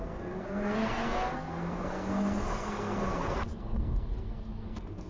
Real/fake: fake